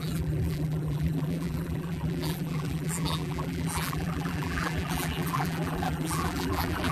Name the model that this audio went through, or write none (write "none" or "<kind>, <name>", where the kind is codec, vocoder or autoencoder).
vocoder, BigVGAN v2